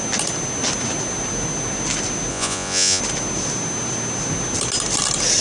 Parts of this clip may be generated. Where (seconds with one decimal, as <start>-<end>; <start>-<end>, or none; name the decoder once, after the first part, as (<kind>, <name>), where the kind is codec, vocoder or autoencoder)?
2.3-3.0 (vocoder, Vocos)